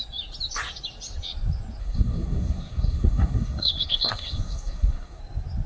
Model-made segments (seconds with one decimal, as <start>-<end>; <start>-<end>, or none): 1.8-5.2